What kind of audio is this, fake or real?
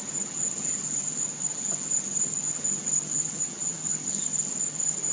fake